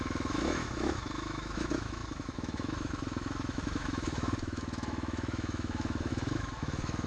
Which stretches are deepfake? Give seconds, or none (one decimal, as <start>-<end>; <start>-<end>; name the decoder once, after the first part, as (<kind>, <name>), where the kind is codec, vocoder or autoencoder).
0.0-7.1 (autoencoder, DAC-VAE)